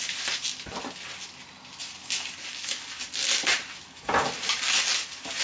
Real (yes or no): yes